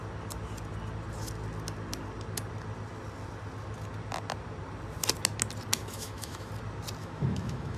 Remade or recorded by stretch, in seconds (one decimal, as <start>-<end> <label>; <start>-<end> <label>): 0.0-5.8 recorded; 5.8-6.5 remade; 6.5-7.0 recorded; 7.0-7.8 remade